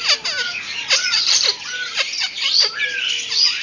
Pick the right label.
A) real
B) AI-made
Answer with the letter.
A